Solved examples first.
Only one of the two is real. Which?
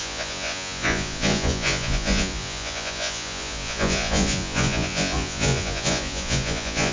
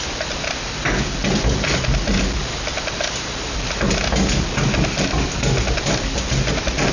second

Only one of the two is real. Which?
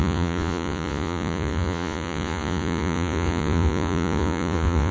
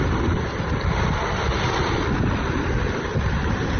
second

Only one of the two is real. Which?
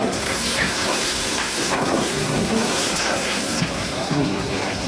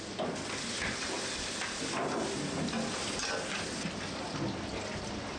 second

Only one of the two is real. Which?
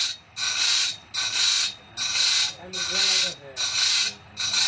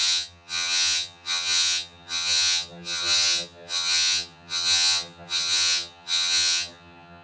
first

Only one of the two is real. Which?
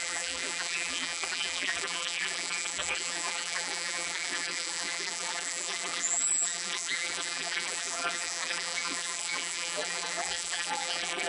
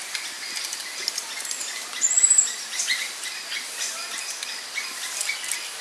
second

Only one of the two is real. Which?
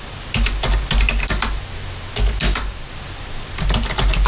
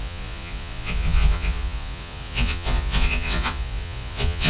first